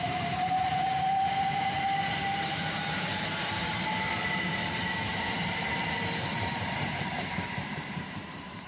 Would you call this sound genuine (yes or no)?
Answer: no